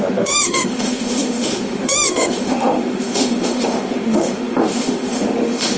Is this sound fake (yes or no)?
yes